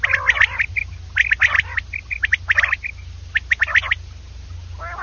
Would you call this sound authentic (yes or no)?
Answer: yes